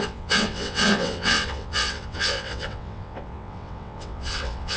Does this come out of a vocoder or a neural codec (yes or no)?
yes